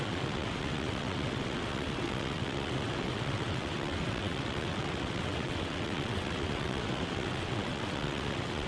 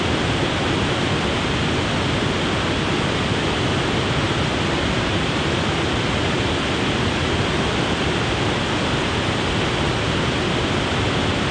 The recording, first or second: second